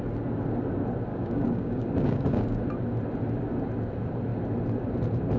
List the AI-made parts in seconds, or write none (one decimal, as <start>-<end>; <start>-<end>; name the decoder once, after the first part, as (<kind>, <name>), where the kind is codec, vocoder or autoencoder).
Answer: 1.1-2.6 (codec, DAC)